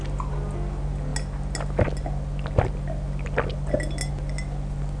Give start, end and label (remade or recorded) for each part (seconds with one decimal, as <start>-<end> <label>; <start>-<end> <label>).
0.0-5.0 recorded